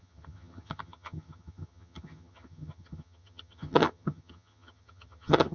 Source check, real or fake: fake